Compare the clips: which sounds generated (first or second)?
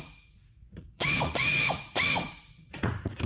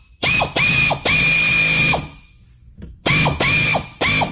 first